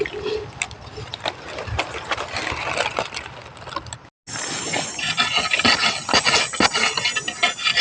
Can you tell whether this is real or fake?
real